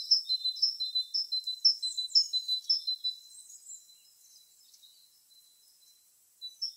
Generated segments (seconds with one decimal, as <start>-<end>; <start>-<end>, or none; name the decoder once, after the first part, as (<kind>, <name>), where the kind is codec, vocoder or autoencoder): none